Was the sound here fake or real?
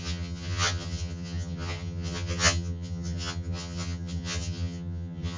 fake